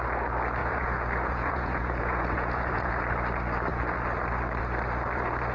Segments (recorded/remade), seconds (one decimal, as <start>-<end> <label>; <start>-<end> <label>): 0.0-0.6 recorded; 0.6-2.9 remade; 2.9-5.5 recorded